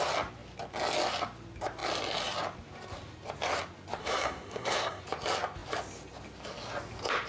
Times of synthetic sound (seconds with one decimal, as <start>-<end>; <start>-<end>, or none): 4.0-5.0